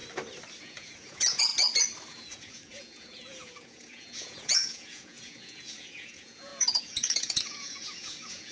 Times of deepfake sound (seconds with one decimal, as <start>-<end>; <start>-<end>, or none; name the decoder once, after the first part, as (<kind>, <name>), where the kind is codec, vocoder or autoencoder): 0.6-1.5 (vocoder, Vocos); 2.1-8.5